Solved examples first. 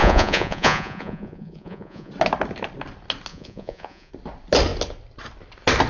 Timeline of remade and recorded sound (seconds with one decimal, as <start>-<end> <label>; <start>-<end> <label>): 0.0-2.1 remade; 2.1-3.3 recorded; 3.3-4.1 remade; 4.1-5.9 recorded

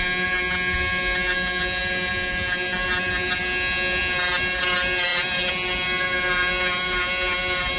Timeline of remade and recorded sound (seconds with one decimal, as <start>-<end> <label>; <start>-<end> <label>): 0.0-7.8 recorded

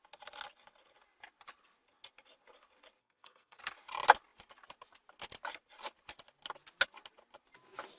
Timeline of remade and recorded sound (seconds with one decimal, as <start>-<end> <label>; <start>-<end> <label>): 0.0-3.0 recorded; 3.0-3.6 remade; 3.6-8.0 recorded

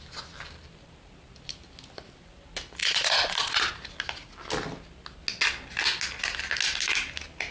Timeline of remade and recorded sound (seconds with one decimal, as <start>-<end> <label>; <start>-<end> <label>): 0.0-2.8 recorded; 2.8-3.7 remade; 3.7-7.5 recorded